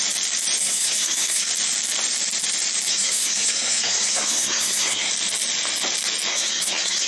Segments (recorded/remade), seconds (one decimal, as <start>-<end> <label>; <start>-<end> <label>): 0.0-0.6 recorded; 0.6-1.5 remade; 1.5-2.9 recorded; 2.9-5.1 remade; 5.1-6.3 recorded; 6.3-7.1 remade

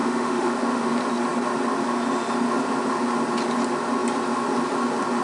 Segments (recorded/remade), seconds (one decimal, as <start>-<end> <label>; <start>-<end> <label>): 0.0-0.9 remade; 0.9-5.2 recorded

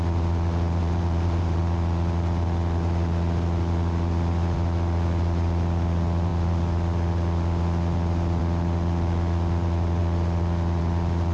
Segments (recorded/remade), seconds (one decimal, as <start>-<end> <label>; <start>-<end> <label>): 0.0-0.8 recorded; 0.8-1.6 remade; 1.6-11.3 recorded

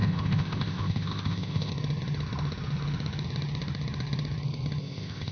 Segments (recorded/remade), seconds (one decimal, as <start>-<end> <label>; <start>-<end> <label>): 0.0-1.7 remade; 1.7-4.8 recorded; 4.8-5.3 remade

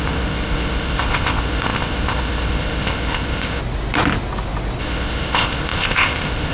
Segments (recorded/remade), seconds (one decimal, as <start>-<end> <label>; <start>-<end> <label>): 0.0-3.6 remade; 3.6-4.8 recorded; 4.8-6.5 remade